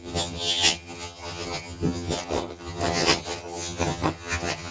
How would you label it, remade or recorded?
remade